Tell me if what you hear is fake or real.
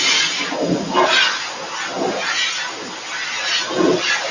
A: real